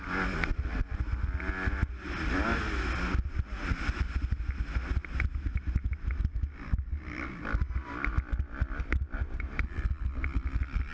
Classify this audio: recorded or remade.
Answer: recorded